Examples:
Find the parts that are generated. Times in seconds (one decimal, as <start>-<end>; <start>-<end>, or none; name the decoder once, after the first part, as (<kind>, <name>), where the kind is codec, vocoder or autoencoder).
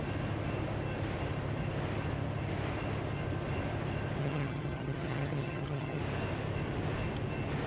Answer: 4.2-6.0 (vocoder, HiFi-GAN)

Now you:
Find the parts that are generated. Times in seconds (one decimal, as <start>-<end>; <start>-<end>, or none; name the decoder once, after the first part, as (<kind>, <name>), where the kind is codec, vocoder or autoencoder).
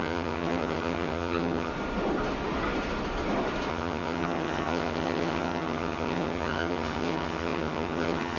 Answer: 0.0-1.7 (vocoder, HiFi-GAN); 3.7-8.4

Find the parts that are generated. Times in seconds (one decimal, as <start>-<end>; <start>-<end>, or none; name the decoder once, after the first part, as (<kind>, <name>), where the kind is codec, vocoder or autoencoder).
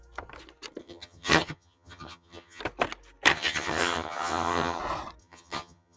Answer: 0.8-2.6 (vocoder, HiFi-GAN); 3.3-4.8; 5.2-6.0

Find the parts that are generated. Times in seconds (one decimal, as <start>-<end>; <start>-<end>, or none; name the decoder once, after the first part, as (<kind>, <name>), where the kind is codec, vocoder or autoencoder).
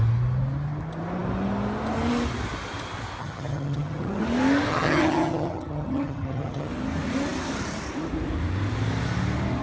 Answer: 3.2-4.2 (vocoder, HiFi-GAN); 4.7-6.7